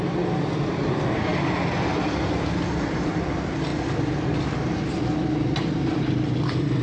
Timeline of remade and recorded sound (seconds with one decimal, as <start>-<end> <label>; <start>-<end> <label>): 0.0-1.3 remade; 1.3-2.0 recorded; 2.0-3.7 remade; 3.7-5.8 recorded; 5.8-6.8 remade